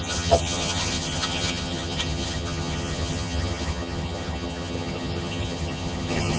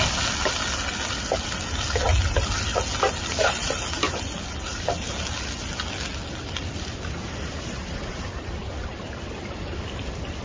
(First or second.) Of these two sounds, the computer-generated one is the first